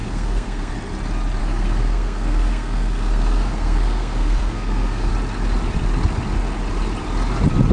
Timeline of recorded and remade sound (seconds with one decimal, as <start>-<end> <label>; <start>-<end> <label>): 0.0-0.7 remade; 0.7-1.4 recorded; 1.4-5.1 remade; 5.1-7.7 recorded